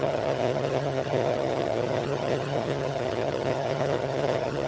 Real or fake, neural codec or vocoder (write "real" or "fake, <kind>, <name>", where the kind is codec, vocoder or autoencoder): fake, vocoder, HiFi-GAN